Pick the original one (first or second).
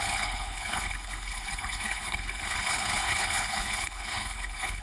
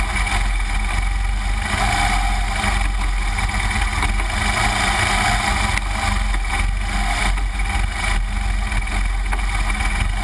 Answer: second